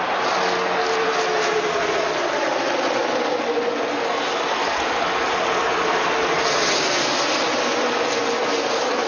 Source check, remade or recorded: recorded